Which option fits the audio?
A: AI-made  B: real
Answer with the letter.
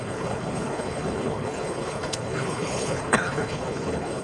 A